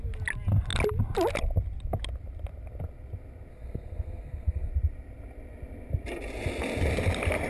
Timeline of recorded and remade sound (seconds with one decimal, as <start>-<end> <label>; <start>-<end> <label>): 0.0-3.5 recorded; 3.5-4.7 remade; 4.7-7.5 recorded